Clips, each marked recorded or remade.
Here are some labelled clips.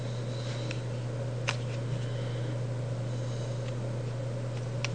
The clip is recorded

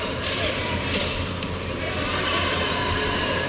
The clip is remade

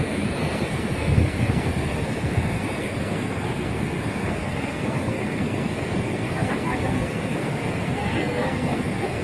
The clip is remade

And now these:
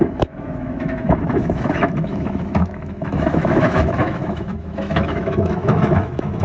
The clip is remade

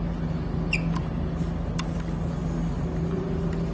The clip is recorded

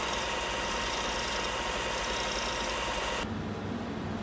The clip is recorded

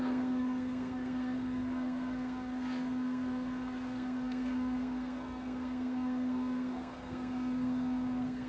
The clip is remade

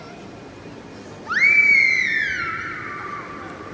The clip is remade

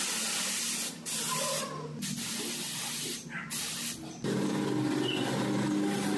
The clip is recorded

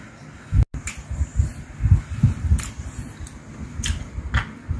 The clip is recorded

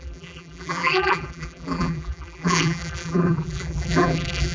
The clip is remade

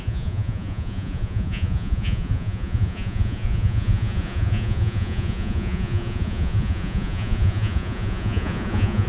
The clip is remade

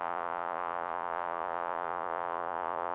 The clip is remade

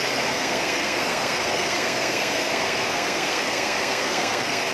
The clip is remade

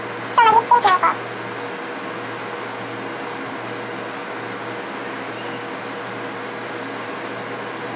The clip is recorded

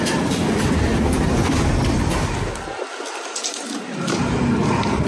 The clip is recorded